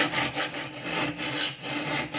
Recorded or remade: recorded